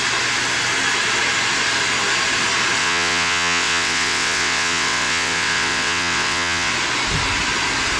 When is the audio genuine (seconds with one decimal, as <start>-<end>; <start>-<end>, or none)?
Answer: 0.0-2.8; 6.7-8.0